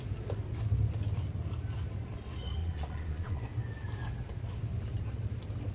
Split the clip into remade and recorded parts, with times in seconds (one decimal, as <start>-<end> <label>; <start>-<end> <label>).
0.0-2.6 recorded; 2.6-3.4 remade; 3.4-5.7 recorded

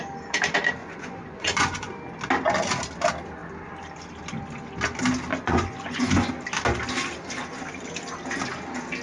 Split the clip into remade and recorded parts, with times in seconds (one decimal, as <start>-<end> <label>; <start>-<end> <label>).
0.0-0.8 recorded; 0.8-1.9 remade; 1.9-5.3 recorded; 5.3-6.3 remade; 6.3-9.0 recorded

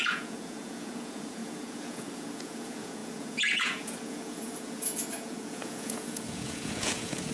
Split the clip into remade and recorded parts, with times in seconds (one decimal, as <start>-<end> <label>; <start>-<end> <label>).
0.0-7.3 remade

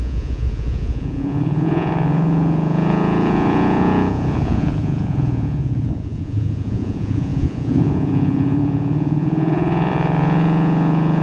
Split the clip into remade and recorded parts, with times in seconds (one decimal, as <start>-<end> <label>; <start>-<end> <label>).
0.0-11.2 remade

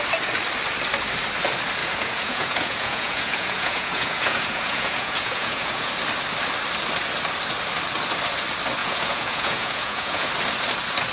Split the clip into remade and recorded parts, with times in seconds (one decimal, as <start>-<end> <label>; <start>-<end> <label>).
0.0-1.8 recorded; 1.8-5.9 remade; 5.9-8.8 recorded; 8.8-10.3 remade; 10.3-11.1 recorded

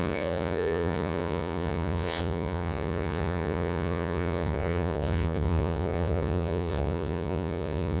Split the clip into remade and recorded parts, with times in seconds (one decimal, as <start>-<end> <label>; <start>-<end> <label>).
0.0-8.0 remade

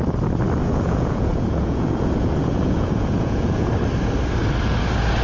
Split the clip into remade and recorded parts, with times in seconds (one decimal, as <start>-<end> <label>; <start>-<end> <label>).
0.0-0.6 recorded; 0.6-3.7 remade; 3.7-5.2 recorded

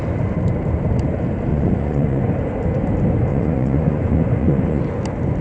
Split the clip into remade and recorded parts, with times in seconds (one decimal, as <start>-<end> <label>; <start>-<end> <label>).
0.0-1.5 recorded; 1.5-2.2 remade; 2.2-3.3 recorded; 3.3-4.8 remade; 4.8-5.4 recorded